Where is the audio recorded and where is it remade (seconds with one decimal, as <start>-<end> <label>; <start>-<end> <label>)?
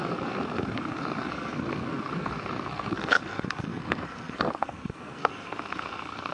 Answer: 0.0-6.3 remade